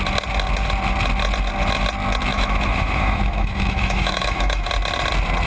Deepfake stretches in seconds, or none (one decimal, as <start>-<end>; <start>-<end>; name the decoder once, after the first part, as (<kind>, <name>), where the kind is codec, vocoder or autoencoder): 2.3-4.7 (autoencoder, DAC-VAE)